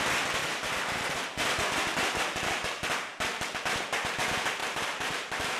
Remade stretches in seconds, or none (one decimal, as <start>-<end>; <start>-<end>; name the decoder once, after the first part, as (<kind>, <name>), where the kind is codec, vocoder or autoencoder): 0.4-1.2 (vocoder, BigVGAN v2); 4.6-5.6